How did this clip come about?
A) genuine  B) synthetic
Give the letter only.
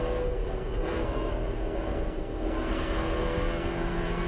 B